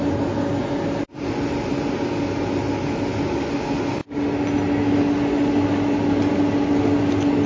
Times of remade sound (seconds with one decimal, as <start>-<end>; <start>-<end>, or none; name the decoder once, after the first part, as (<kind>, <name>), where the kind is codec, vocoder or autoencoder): none